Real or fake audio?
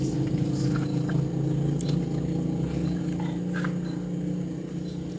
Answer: real